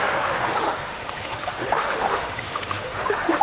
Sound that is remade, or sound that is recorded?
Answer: remade